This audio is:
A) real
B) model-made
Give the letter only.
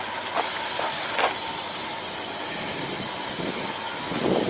A